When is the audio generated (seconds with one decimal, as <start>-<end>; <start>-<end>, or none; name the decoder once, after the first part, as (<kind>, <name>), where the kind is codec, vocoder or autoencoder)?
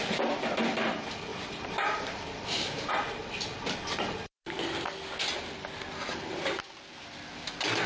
1.3-2.9 (vocoder, BigVGAN v2)